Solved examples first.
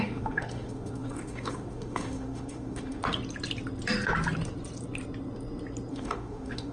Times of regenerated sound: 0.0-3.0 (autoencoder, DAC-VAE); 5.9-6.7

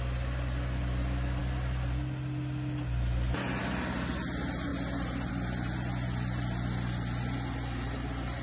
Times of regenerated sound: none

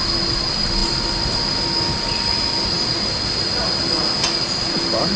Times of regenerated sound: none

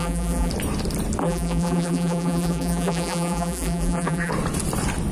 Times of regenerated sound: 0.0-0.5 (vocoder, BigVGAN v2); 1.2-4.3

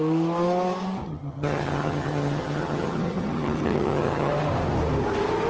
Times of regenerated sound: 1.0-4.3 (vocoder, HiFi-GAN)

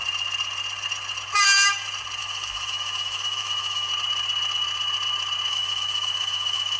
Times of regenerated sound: 2.2-3.9 (autoencoder, DAC-VAE); 5.5-6.8

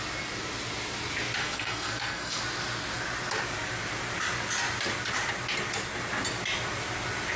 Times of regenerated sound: 1.4-2.4 (codec, SNAC)